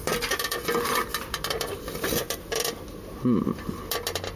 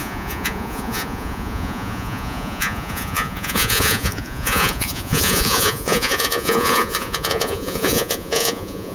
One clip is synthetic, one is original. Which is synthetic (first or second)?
second